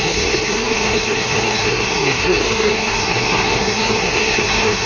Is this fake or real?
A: fake